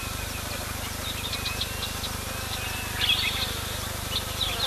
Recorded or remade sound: recorded